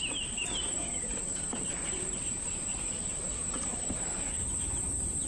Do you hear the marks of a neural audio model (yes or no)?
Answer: yes